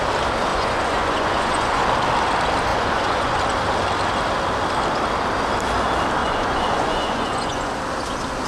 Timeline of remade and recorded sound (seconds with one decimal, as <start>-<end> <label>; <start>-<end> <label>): 0.0-0.5 recorded; 0.5-1.8 remade; 1.8-2.7 recorded; 2.7-3.4 remade; 3.4-6.2 recorded; 6.2-7.7 remade; 7.7-8.5 recorded